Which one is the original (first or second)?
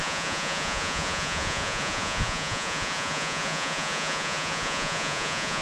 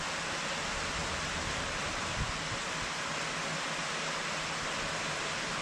second